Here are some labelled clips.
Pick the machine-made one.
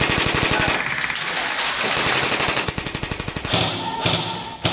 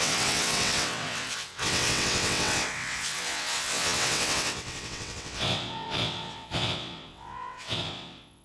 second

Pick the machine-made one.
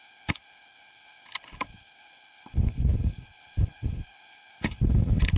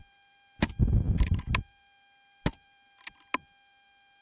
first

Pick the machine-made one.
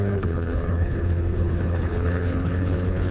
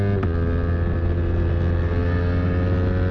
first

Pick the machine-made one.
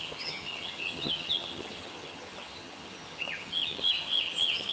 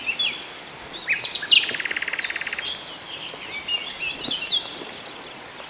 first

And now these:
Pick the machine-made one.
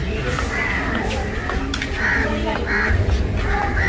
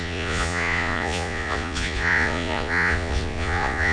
second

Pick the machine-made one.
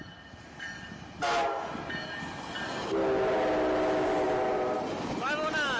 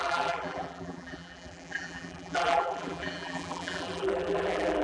second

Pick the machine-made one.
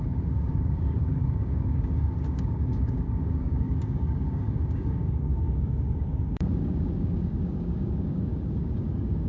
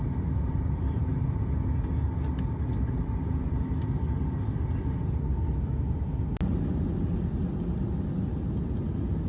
first